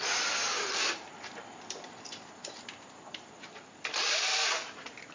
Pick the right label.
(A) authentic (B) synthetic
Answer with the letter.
B